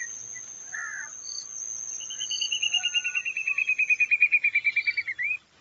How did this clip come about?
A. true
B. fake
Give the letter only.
A